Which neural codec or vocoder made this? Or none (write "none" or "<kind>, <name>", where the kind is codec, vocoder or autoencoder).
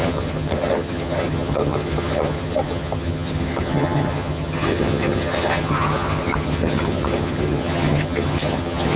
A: vocoder, HiFi-GAN